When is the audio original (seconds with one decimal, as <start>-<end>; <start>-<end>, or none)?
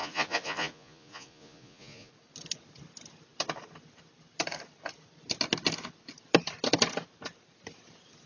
2.1-8.3